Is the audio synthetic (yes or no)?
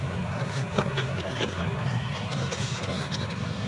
yes